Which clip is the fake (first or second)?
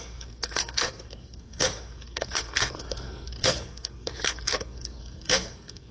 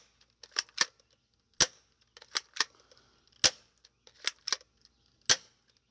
first